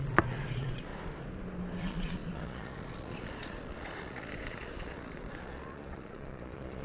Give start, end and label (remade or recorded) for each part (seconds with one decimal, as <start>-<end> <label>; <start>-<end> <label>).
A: 0.0-0.9 remade; 0.9-1.8 recorded; 1.8-6.8 remade